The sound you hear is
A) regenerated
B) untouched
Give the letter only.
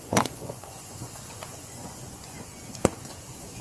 A